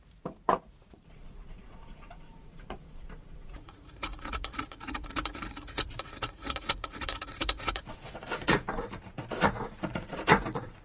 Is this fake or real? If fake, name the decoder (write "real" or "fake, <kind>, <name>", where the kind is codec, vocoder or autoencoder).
fake, vocoder, Vocos